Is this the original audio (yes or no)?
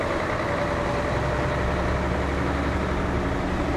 yes